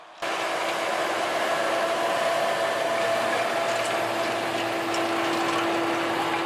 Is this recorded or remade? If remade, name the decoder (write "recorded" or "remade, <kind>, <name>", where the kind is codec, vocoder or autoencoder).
recorded